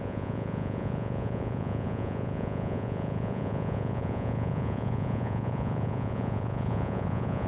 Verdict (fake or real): fake